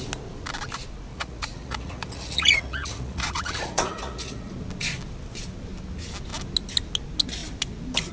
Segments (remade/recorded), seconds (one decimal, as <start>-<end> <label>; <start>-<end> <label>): 0.0-1.1 recorded; 1.1-4.5 remade; 4.5-8.1 recorded